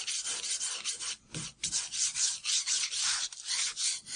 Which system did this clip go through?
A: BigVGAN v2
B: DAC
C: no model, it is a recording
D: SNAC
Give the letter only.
C